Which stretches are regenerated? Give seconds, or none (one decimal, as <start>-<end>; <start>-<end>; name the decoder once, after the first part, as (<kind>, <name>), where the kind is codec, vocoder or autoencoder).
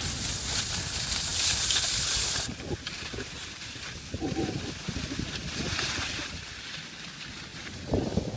1.3-3.7 (vocoder, BigVGAN v2); 5.4-6.0; 7.5-8.0